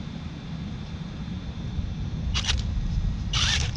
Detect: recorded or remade recorded